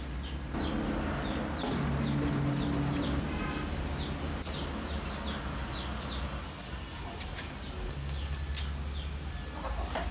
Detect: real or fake real